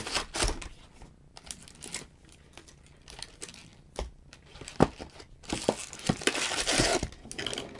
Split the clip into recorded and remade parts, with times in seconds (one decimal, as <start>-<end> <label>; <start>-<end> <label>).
0.0-3.7 recorded; 3.7-7.1 remade; 7.1-7.8 recorded